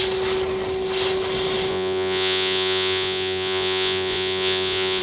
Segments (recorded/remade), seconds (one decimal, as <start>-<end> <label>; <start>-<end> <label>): 0.0-1.7 recorded; 1.7-5.0 remade